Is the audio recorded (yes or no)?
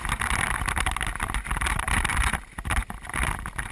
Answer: yes